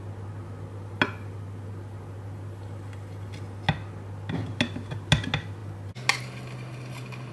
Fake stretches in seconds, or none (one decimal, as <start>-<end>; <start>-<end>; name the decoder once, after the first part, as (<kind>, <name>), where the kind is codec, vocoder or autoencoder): none